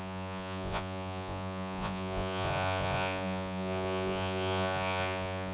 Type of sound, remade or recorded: remade